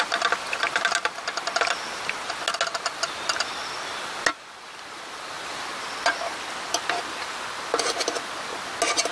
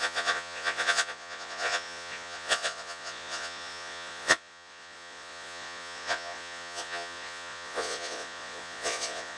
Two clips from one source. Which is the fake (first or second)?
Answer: second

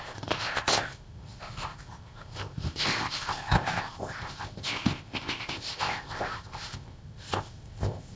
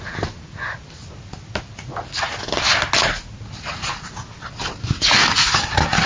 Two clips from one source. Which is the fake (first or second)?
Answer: first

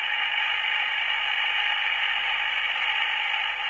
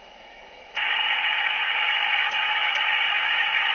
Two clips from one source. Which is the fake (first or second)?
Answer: second